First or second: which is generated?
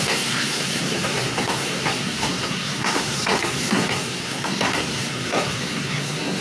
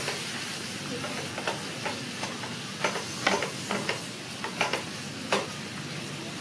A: first